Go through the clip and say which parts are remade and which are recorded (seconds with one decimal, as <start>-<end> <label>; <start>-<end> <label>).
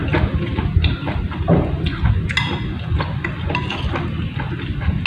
0.0-5.1 recorded